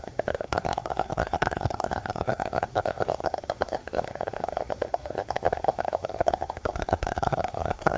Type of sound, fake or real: fake